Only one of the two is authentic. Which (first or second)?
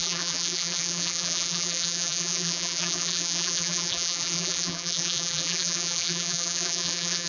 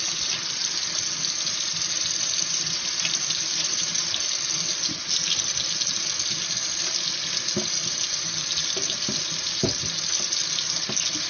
second